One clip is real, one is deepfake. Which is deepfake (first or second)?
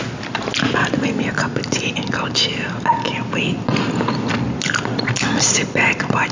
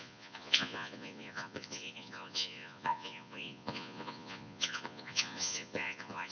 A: second